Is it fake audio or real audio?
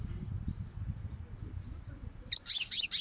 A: real